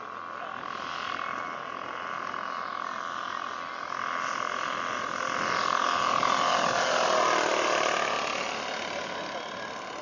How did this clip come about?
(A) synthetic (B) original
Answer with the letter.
B